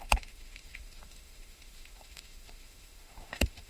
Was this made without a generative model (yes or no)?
no